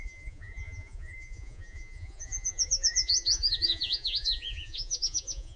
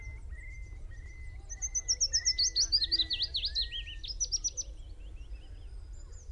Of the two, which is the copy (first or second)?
first